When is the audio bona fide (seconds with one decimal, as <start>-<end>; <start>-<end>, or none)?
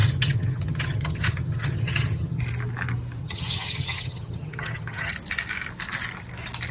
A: 2.4-3.2; 5.1-6.7